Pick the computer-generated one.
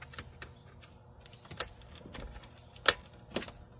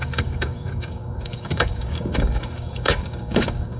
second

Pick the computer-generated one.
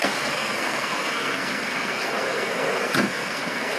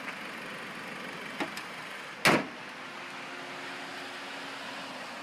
first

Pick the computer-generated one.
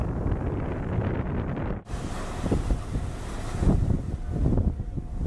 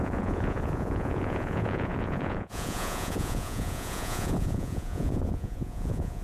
second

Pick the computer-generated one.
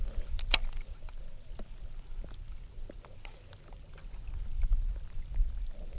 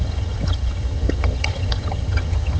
second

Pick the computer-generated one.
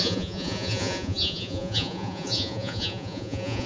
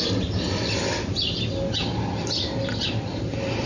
first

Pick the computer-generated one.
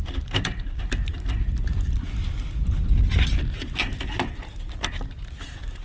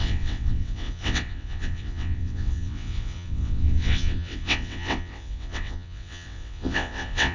second